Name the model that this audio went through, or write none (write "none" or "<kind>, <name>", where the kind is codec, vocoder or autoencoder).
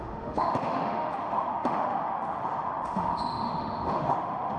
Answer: autoencoder, DAC-VAE